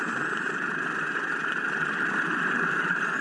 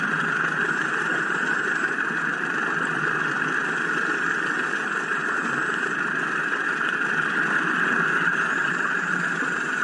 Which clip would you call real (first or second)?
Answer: second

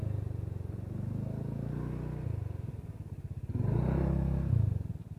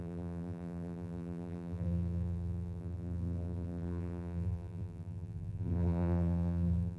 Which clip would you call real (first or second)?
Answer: first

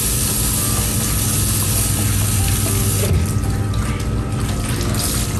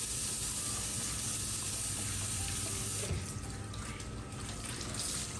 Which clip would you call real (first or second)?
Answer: first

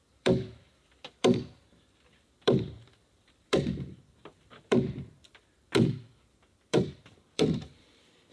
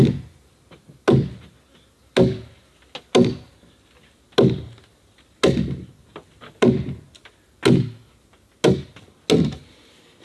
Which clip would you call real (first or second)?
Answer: second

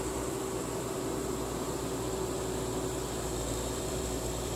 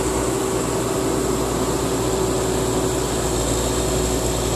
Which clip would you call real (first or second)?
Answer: second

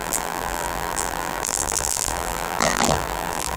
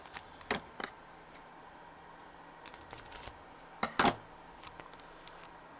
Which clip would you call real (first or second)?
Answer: second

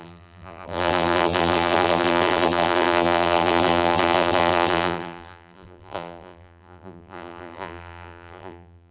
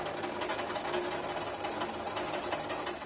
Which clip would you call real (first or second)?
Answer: second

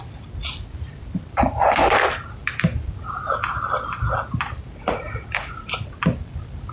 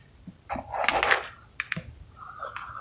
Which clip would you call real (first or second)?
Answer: second